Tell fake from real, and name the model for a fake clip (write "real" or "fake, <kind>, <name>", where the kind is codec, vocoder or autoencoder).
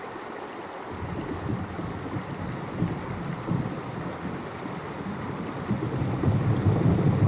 real